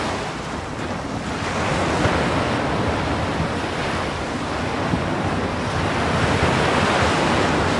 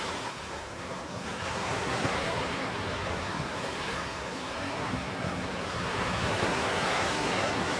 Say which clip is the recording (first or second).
first